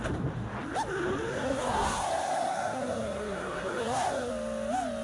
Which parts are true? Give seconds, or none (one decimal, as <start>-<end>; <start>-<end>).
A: 0.0-1.3; 4.3-5.0